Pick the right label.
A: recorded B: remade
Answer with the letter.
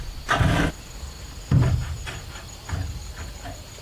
A